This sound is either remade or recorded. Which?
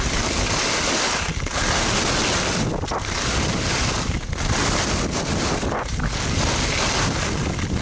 recorded